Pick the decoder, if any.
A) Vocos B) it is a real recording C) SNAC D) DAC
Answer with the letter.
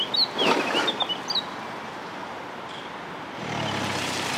B